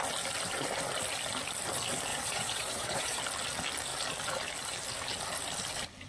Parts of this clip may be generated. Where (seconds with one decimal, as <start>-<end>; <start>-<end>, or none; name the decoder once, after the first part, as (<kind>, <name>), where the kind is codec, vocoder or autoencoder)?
2.1-3.2 (vocoder, Vocos)